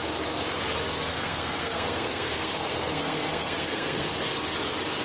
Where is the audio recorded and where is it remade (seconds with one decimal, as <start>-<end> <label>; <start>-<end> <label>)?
0.0-1.1 recorded; 1.1-4.1 remade; 4.1-5.0 recorded